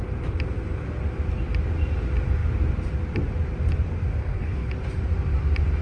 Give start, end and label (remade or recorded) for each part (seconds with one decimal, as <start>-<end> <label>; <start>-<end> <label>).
0.0-4.2 recorded; 4.2-4.7 remade; 4.7-5.8 recorded